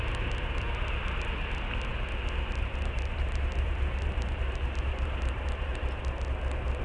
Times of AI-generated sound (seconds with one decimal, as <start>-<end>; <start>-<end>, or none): 1.9-6.0